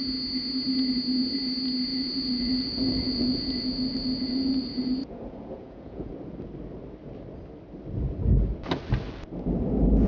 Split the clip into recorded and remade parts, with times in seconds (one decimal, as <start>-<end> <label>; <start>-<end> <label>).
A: 0.0-1.9 recorded; 1.9-6.1 remade; 6.1-10.1 recorded